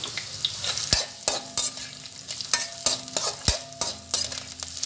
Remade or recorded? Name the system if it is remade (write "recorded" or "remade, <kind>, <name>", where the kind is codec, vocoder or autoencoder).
recorded